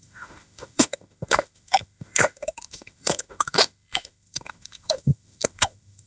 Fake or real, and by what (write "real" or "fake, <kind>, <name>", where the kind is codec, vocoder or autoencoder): fake, autoencoder, DAC-VAE